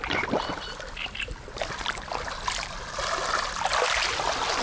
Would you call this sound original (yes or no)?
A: yes